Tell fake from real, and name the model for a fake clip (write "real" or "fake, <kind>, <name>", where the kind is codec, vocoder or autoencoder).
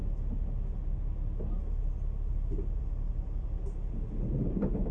real